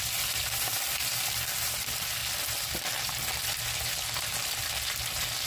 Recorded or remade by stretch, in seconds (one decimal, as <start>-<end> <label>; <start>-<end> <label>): 0.0-2.2 remade; 2.2-5.5 recorded